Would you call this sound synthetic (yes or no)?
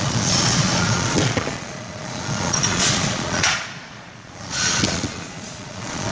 yes